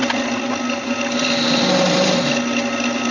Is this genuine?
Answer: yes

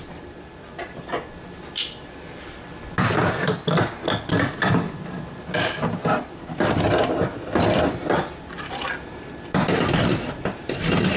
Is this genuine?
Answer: no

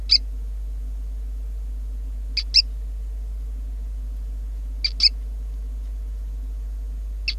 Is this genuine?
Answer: yes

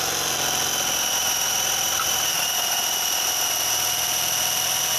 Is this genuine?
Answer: yes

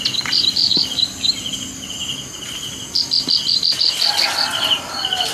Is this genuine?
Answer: yes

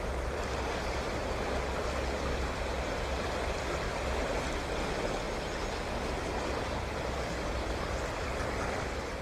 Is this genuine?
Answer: yes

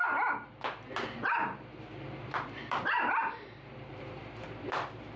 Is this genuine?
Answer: no